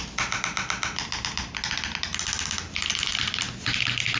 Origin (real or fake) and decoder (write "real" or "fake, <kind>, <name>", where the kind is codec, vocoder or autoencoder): real